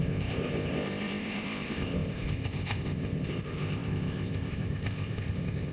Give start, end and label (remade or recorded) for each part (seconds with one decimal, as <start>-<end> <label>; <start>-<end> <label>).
0.0-5.7 remade